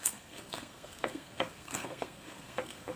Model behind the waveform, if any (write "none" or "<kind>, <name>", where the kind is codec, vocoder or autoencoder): codec, SNAC